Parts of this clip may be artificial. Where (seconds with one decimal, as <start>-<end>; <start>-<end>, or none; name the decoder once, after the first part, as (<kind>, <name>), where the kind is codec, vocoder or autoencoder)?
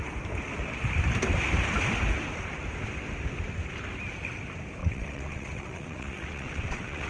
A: 4.8-7.1 (vocoder, WaveNeXt)